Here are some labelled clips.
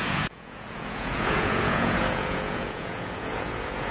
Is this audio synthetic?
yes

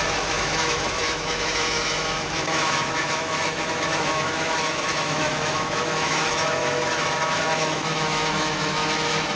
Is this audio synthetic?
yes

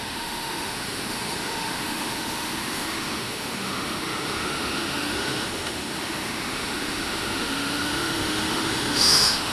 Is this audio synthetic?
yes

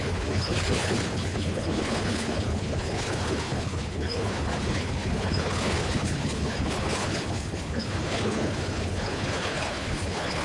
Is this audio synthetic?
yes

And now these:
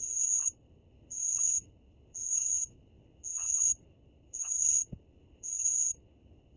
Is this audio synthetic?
yes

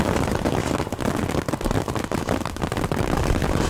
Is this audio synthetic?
no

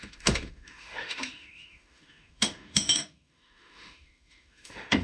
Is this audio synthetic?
yes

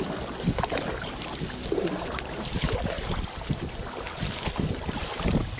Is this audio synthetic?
no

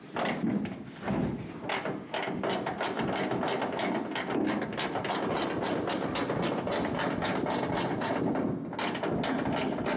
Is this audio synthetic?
no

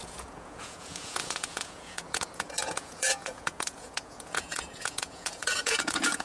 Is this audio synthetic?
yes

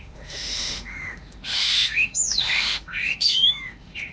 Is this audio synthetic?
yes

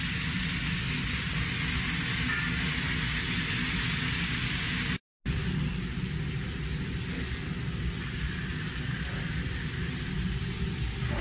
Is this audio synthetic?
no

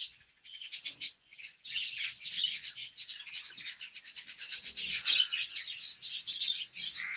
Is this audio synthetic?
yes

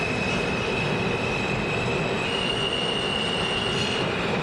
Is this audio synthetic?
no